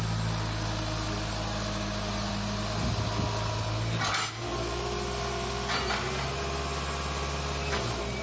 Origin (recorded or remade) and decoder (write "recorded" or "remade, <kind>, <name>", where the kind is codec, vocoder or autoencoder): recorded